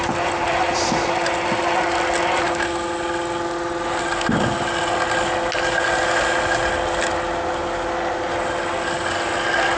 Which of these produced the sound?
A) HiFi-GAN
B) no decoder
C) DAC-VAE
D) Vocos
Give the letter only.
B